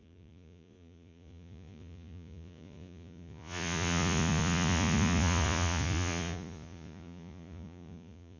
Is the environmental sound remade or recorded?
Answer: remade